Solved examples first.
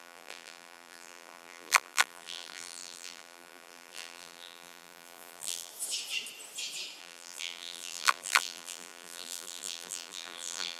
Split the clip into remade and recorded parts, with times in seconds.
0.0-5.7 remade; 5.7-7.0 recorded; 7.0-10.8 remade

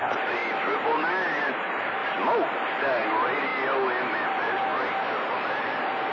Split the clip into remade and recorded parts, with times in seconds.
0.0-0.4 remade; 0.4-1.4 recorded; 1.4-2.0 remade; 2.0-2.9 recorded; 2.9-3.5 remade; 3.5-4.1 recorded; 4.1-4.7 remade; 4.7-5.3 recorded; 5.3-6.1 remade

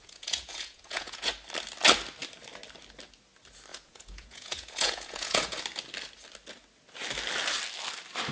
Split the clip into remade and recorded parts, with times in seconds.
0.0-1.3 remade; 1.3-3.7 recorded; 3.7-5.6 remade; 5.6-8.3 recorded

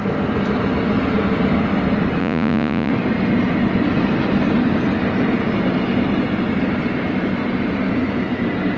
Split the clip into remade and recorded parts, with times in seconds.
0.0-2.2 recorded; 2.2-2.9 remade; 2.9-8.8 recorded